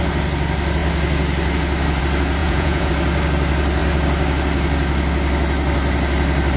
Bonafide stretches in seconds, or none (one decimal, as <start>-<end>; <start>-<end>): 0.0-2.4; 2.9-6.6